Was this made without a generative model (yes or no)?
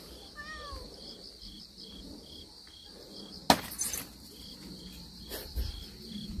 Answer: yes